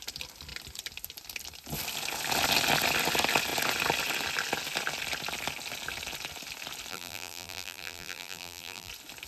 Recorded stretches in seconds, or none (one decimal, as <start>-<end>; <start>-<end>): 0.0-6.9; 8.9-9.3